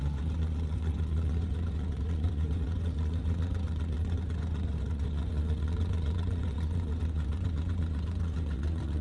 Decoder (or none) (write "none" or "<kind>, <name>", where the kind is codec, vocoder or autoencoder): vocoder, Vocos